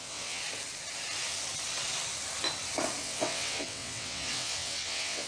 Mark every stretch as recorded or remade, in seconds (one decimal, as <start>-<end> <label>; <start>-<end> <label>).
0.0-0.4 remade; 0.4-3.0 recorded; 3.0-5.3 remade